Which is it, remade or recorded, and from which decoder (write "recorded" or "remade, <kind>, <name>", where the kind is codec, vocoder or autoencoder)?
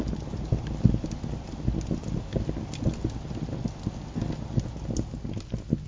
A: recorded